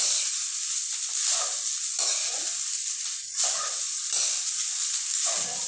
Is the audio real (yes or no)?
yes